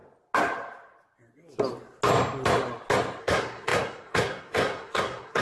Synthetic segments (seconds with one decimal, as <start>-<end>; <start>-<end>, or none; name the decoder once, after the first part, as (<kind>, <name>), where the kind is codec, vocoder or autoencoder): 3.2-5.4 (codec, SNAC)